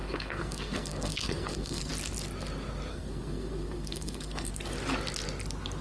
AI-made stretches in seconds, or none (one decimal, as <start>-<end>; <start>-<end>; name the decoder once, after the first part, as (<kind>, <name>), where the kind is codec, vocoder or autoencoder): 0.0-1.9 (codec, SNAC); 2.9-4.5